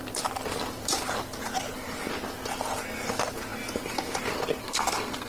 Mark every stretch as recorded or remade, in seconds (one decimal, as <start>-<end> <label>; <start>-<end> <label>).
0.0-4.6 recorded; 4.6-5.3 remade